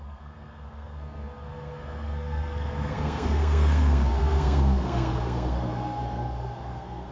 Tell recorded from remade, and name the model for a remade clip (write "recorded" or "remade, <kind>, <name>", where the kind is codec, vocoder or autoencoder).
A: remade, codec, SNAC